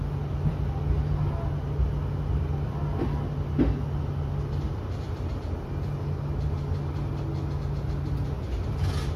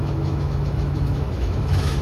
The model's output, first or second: second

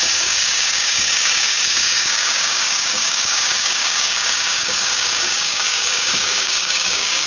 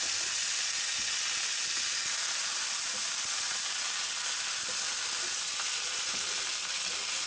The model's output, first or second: first